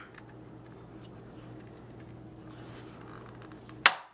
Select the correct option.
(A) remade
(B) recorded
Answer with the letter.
B